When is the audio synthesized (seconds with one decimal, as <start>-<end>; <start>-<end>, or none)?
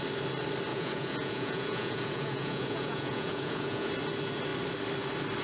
0.7-3.9